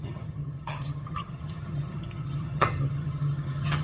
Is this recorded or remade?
remade